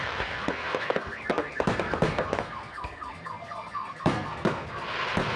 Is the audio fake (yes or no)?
yes